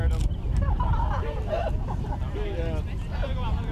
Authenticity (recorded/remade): recorded